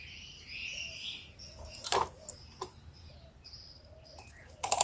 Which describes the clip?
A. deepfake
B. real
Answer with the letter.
B